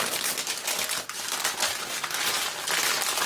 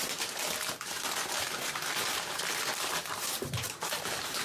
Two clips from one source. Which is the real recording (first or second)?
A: first